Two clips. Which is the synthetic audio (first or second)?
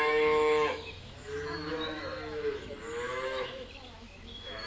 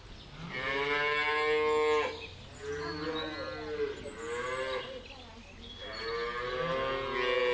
first